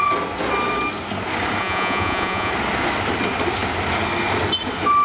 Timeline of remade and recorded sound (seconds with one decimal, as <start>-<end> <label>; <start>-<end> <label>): 0.0-1.6 recorded; 1.6-2.5 remade; 2.5-5.0 recorded